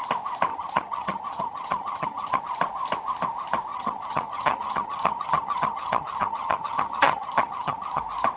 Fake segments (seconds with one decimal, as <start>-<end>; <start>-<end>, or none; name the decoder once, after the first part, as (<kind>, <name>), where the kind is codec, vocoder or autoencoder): 0.5-2.4 (vocoder, HiFi-GAN); 3.7-8.0

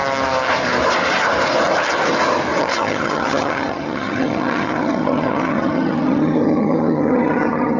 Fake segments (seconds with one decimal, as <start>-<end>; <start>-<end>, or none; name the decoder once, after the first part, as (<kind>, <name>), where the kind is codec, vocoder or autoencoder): 2.6-7.8 (vocoder, HiFi-GAN)

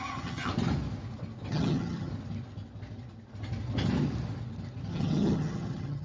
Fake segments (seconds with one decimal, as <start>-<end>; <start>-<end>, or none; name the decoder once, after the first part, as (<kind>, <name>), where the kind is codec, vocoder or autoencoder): 0.0-0.5 (vocoder, HiFi-GAN); 1.5-2.1; 4.9-6.0

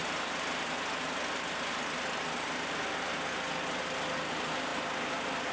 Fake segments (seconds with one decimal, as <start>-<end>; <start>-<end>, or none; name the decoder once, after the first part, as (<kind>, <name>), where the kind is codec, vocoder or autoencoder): none

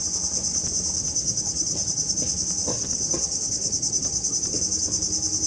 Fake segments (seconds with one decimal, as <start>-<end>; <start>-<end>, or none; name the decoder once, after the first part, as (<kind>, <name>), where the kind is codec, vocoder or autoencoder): 1.0-2.2 (vocoder, HiFi-GAN); 2.7-4.6